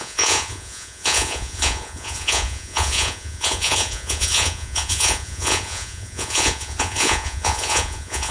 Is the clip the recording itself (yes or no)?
no